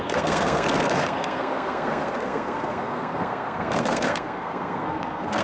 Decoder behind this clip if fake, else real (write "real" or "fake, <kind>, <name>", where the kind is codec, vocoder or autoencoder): fake, codec, SNAC